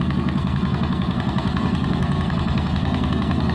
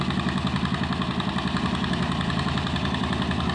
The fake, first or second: first